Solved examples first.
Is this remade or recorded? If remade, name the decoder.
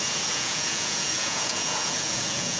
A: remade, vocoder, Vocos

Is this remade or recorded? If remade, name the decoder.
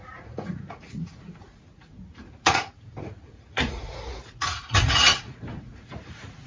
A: remade, vocoder, Vocos